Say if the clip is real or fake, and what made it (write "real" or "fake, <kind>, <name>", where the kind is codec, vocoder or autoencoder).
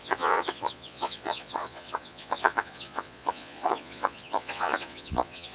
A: fake, vocoder, Vocos